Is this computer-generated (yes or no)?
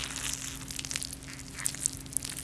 no